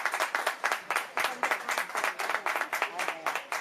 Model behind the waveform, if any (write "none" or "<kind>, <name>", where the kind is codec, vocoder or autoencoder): none